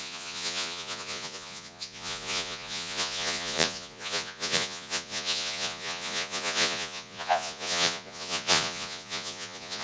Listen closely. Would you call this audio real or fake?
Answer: fake